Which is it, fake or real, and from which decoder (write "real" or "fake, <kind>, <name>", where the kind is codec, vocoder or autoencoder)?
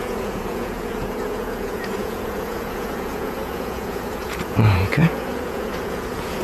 fake, vocoder, Vocos